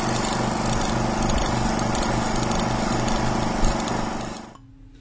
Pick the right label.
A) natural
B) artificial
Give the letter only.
A